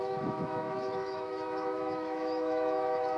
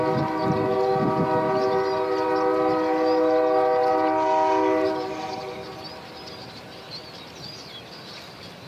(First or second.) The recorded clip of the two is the second